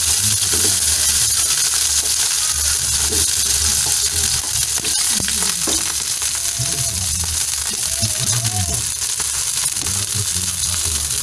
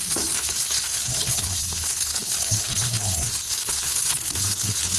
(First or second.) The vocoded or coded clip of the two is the second